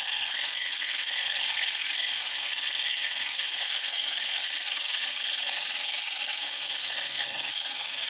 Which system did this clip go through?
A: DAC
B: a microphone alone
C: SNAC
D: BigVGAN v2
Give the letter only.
C